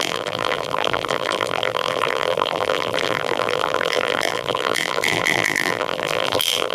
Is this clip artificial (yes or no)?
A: yes